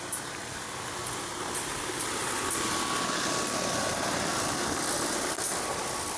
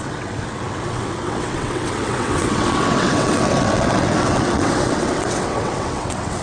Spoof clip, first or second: second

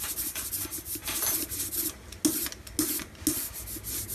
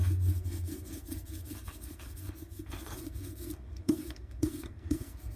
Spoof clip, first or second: second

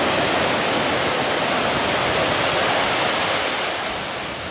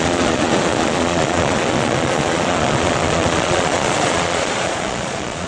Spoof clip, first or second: second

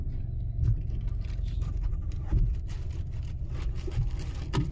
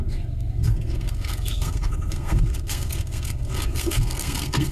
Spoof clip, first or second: second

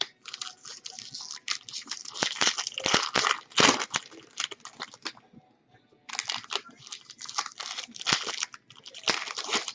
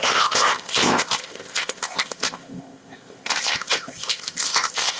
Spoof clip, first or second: second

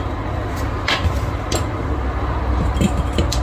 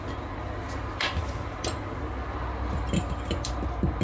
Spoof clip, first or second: first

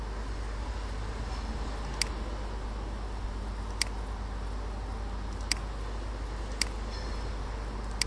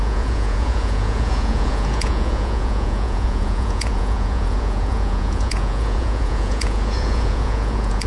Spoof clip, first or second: second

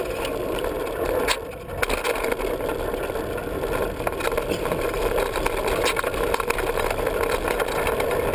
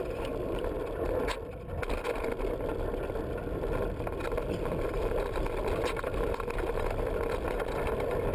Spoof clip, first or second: second